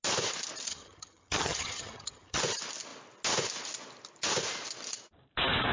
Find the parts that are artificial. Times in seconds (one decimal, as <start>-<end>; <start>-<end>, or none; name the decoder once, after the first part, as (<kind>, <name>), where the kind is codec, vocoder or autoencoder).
0.7-2.4 (vocoder, HiFi-GAN)

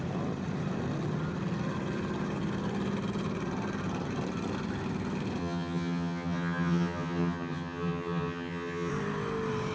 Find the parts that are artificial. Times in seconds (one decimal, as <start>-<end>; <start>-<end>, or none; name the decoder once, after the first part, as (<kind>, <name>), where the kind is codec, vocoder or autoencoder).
5.4-8.9 (vocoder, HiFi-GAN)

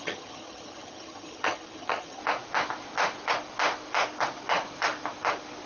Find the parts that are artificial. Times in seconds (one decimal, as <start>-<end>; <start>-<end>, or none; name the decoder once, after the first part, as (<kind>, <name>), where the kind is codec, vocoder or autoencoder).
0.0-2.2 (vocoder, HiFi-GAN)

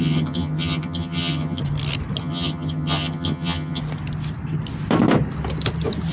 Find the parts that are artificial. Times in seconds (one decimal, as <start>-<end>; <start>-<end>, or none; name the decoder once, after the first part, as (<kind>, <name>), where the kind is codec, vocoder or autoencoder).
0.0-1.6 (vocoder, HiFi-GAN); 2.2-3.8

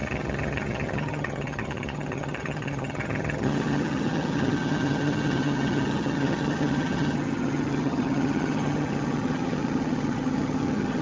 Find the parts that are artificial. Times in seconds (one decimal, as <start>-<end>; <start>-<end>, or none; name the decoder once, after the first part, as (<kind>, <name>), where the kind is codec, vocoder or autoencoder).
0.0-11.0 (vocoder, HiFi-GAN)

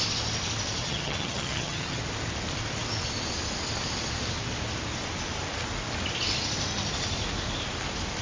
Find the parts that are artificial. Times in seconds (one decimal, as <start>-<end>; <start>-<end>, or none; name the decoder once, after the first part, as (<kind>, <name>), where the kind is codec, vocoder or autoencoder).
0.8-2.0 (vocoder, HiFi-GAN)

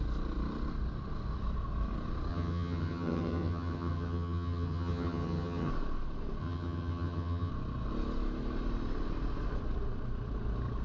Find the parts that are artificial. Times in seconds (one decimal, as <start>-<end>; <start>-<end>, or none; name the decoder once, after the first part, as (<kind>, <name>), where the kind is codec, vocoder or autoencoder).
2.3-5.7 (vocoder, HiFi-GAN); 6.4-7.5

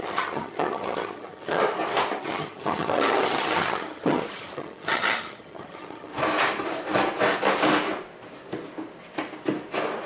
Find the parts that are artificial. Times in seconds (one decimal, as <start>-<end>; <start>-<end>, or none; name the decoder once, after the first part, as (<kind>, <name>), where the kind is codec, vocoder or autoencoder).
0.0-1.6 (vocoder, HiFi-GAN); 2.2-6.1